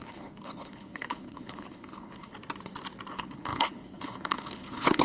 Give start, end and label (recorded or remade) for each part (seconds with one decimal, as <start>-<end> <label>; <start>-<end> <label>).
0.0-2.3 remade; 2.3-3.1 recorded; 3.1-5.0 remade